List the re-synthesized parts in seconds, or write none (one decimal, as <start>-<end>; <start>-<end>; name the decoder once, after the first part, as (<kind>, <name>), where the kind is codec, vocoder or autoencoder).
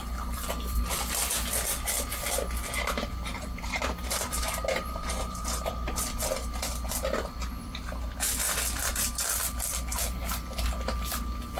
3.3-5.7 (vocoder, BigVGAN v2)